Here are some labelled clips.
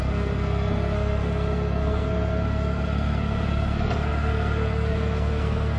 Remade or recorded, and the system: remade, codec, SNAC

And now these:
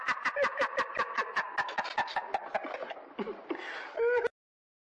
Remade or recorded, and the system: recorded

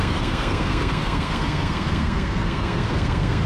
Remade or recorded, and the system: remade, codec, SNAC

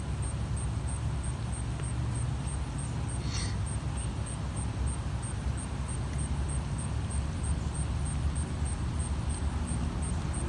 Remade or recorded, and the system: recorded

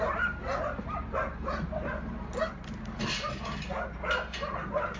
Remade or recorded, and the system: recorded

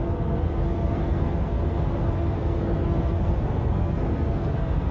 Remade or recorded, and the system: remade, codec, SNAC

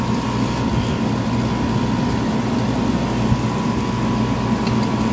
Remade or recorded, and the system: recorded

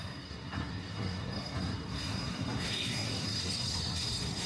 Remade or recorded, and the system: remade, codec, SNAC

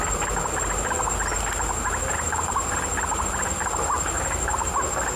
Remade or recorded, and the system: recorded